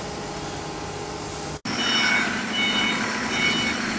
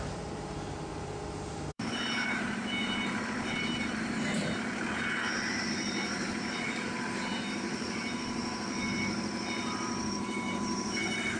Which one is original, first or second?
first